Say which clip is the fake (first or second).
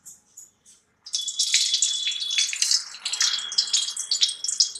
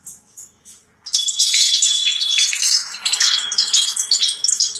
second